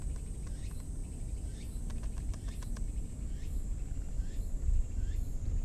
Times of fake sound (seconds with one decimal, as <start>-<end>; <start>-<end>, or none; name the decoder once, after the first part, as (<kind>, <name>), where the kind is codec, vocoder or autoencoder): none